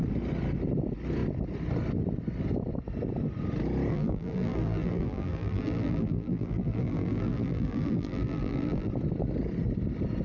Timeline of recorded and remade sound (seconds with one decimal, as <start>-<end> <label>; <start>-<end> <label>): 0.0-3.9 recorded; 3.9-8.9 remade; 8.9-10.2 recorded